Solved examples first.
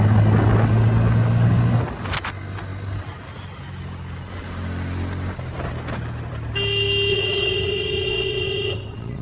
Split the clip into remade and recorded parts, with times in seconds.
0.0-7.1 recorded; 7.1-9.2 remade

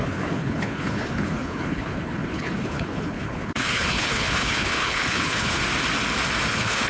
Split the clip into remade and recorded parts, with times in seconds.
0.0-5.6 remade; 5.6-6.5 recorded; 6.5-6.9 remade